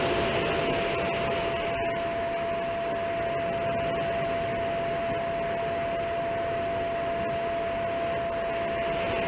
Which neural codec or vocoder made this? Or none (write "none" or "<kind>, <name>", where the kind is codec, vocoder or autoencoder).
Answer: none